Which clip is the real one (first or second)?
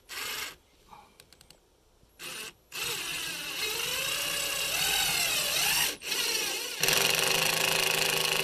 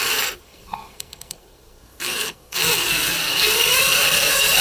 first